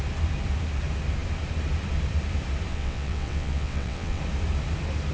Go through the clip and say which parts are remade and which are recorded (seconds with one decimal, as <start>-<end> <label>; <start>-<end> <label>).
0.0-2.7 recorded; 2.7-4.2 remade; 4.2-5.1 recorded